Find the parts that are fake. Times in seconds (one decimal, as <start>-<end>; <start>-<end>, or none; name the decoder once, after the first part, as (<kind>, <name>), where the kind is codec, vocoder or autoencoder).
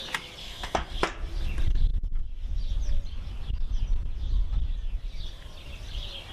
0.4-1.0 (codec, SNAC)